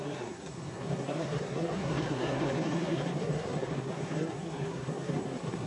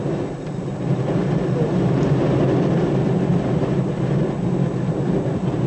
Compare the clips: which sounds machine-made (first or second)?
first